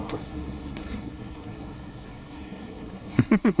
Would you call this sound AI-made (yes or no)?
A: yes